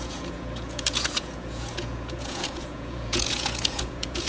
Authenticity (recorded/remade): remade